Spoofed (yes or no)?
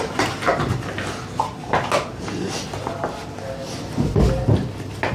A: no